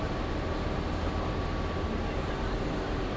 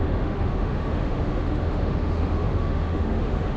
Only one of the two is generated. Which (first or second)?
second